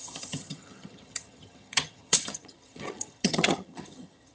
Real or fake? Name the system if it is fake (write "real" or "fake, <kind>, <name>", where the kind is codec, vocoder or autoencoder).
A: fake, vocoder, HiFi-GAN